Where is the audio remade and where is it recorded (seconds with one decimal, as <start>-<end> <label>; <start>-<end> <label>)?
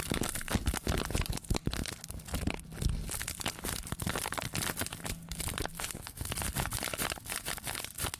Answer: 0.0-5.7 recorded; 5.7-6.3 remade; 6.3-8.2 recorded